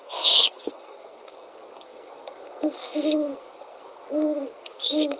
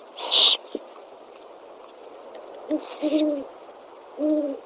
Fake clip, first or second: first